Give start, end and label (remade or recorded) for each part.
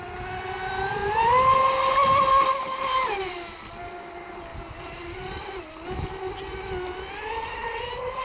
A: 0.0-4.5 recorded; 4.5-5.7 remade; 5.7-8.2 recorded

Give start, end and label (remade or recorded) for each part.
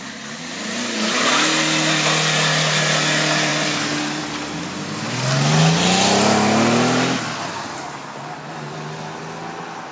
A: 0.0-9.9 recorded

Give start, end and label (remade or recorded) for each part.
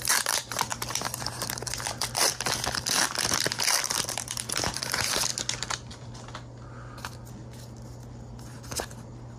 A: 0.0-5.3 remade; 5.3-9.4 recorded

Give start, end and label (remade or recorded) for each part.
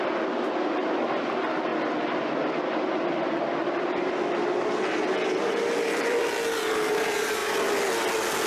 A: 0.0-3.6 recorded; 3.6-6.2 remade; 6.2-7.4 recorded; 7.4-8.1 remade; 8.1-8.5 recorded